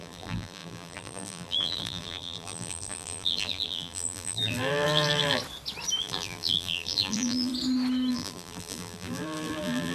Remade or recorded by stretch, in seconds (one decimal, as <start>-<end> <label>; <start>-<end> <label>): 0.0-5.4 remade; 5.4-6.0 recorded; 6.0-7.5 remade; 7.5-8.1 recorded; 8.1-9.9 remade